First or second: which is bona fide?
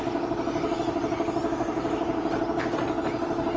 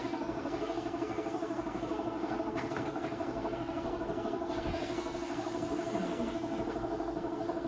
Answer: first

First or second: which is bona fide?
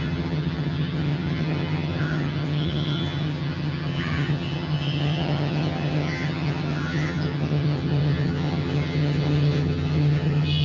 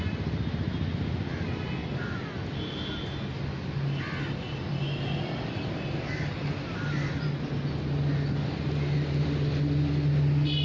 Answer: second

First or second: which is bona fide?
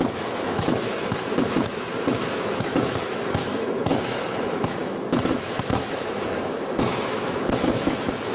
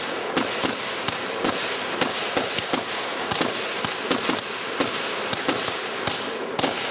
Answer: second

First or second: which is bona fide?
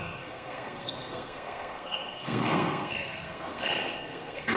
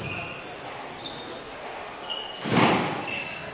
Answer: second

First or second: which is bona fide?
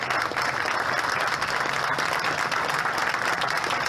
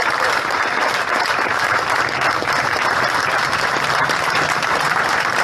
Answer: first